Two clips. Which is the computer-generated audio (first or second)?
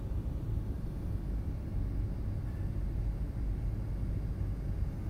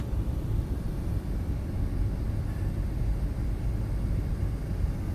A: second